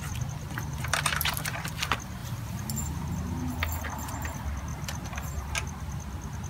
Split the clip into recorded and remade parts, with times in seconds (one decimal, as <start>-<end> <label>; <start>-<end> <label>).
0.0-2.2 recorded; 2.2-2.7 remade; 2.7-4.7 recorded; 4.7-5.5 remade; 5.5-6.5 recorded